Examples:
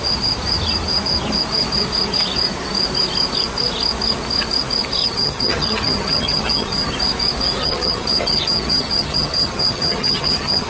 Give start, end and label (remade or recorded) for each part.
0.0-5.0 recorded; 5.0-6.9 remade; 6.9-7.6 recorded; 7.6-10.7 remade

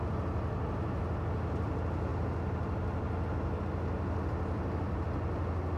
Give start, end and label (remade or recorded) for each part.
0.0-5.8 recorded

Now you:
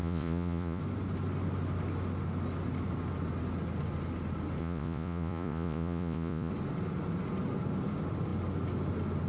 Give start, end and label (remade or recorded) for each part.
0.0-0.8 remade; 0.8-4.6 recorded; 4.6-6.5 remade; 6.5-9.3 recorded

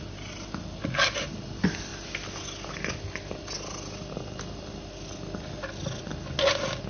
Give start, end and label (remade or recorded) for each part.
0.0-6.9 recorded